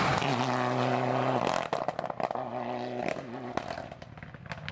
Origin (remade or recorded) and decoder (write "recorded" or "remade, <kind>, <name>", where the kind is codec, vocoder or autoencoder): recorded